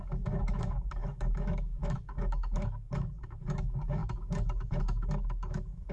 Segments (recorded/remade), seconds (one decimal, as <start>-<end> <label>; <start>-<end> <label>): 0.0-5.9 remade